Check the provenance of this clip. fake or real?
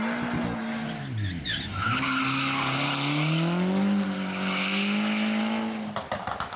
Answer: real